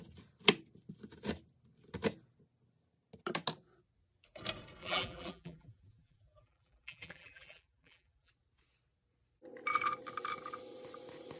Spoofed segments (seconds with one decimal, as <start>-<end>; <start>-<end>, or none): 4.8-8.3